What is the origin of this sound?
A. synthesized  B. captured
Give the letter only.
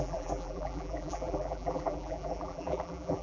A